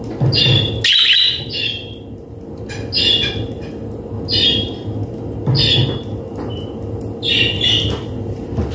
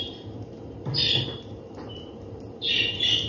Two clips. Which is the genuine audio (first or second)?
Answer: first